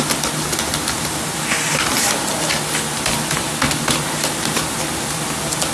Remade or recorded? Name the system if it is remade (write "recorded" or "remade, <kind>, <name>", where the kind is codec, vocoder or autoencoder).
recorded